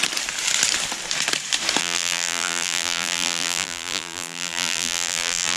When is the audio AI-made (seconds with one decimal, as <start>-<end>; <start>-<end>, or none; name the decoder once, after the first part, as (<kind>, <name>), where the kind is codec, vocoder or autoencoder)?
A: 1.8-5.6 (vocoder, BigVGAN v2)